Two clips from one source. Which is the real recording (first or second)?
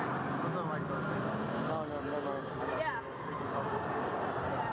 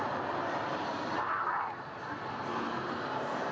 second